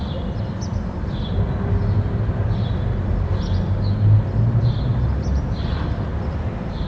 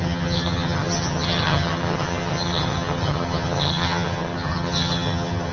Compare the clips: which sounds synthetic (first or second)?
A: second